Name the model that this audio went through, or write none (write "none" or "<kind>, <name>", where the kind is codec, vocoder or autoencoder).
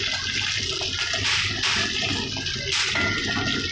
none